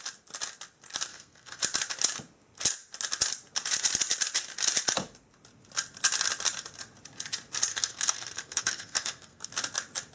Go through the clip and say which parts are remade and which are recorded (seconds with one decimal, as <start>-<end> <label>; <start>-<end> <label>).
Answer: 0.0-1.1 recorded; 1.1-1.6 remade; 1.6-7.7 recorded; 7.7-9.5 remade; 9.5-10.1 recorded